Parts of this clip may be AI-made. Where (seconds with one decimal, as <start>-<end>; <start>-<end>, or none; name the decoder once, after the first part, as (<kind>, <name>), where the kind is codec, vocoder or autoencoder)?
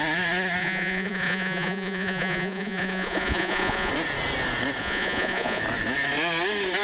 0.6-3.9 (vocoder, Vocos); 4.8-5.6